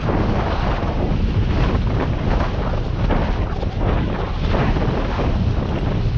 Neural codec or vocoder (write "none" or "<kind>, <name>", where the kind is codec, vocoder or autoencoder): none